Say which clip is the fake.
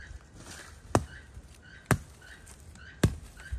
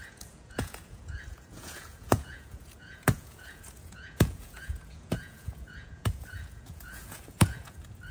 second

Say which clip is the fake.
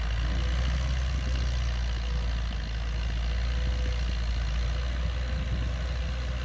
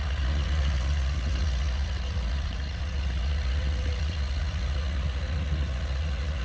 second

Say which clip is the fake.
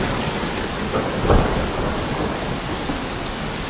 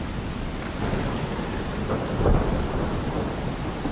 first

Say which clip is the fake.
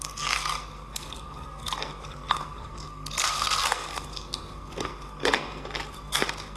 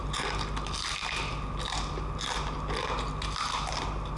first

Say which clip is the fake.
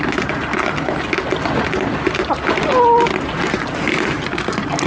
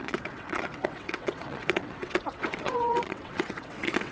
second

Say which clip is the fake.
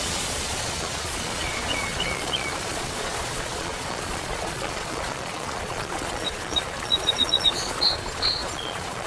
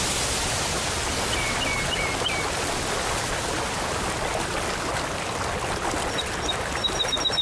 first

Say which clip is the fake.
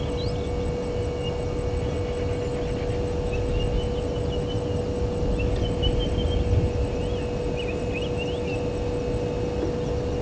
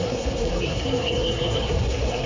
second